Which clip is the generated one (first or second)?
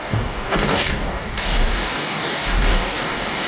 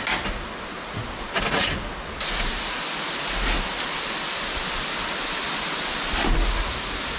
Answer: first